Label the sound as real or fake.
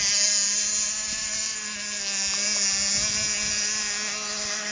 real